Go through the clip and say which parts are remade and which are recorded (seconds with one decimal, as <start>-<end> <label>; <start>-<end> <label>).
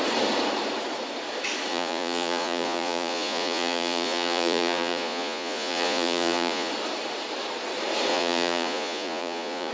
0.0-1.7 recorded; 1.7-6.7 remade; 6.7-8.1 recorded; 8.1-9.7 remade